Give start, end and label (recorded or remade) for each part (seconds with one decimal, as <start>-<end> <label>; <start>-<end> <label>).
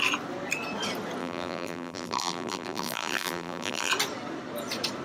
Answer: 0.0-1.2 recorded; 1.2-3.9 remade; 3.9-5.0 recorded